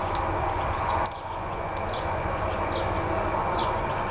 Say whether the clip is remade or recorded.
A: remade